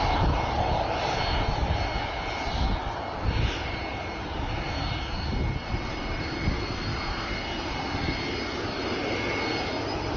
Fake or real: real